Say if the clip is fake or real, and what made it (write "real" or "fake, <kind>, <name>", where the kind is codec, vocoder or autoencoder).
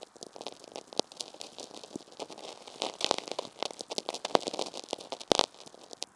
real